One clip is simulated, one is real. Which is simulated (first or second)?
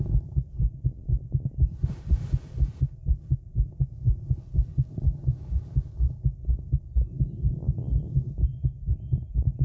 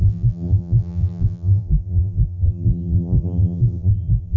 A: second